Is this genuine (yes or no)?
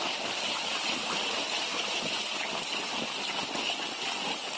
yes